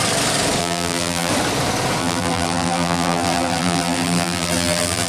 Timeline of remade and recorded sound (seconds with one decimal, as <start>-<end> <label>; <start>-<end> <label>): 0.0-0.6 recorded; 0.6-1.3 remade; 1.3-2.0 recorded; 2.0-5.1 remade